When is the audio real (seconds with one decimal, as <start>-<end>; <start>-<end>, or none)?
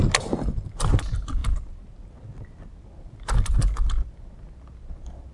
0.0-5.3